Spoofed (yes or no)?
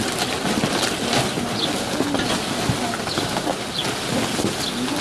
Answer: no